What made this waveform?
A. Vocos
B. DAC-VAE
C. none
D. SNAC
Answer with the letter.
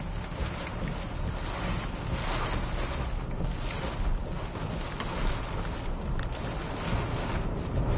C